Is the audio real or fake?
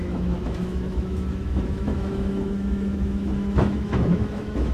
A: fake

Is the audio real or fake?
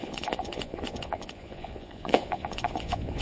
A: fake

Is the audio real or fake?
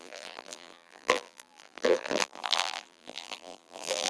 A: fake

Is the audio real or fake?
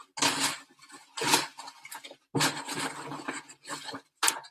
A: real